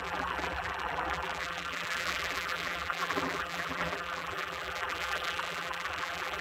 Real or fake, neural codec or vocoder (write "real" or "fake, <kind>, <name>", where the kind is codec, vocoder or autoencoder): fake, vocoder, BigVGAN v2